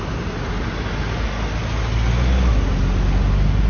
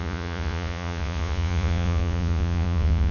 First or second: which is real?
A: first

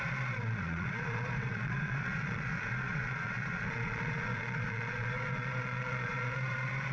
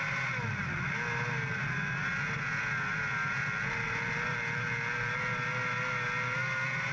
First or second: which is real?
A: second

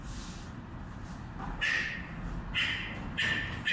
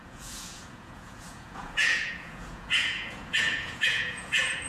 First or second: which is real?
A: first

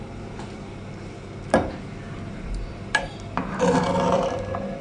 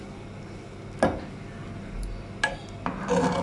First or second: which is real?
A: second